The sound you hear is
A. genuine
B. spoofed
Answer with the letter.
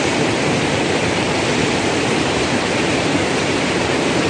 B